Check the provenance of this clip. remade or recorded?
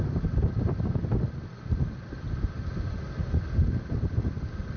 recorded